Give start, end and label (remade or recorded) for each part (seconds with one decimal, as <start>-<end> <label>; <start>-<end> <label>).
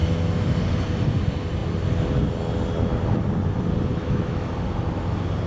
0.0-3.9 recorded; 3.9-4.5 remade; 4.5-5.5 recorded